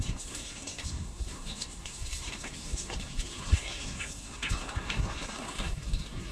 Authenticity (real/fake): fake